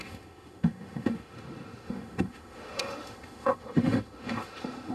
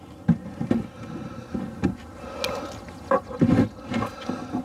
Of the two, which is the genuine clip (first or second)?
second